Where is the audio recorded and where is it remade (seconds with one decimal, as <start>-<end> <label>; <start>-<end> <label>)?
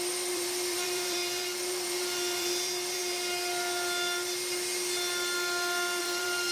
0.0-3.0 remade; 3.0-6.0 recorded; 6.0-6.5 remade